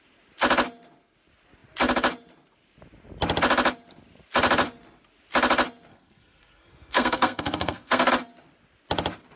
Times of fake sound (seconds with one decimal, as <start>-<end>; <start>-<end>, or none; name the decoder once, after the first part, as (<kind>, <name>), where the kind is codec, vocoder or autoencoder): 5.9-8.1 (codec, SNAC)